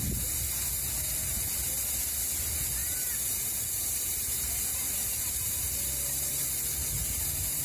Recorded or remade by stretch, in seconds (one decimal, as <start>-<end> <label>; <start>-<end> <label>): 0.0-2.8 recorded; 2.8-7.6 remade